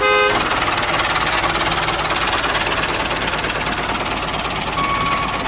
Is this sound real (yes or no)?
yes